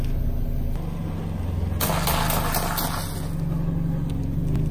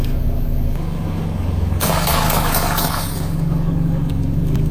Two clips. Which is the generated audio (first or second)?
second